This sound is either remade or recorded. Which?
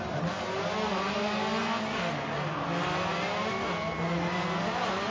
recorded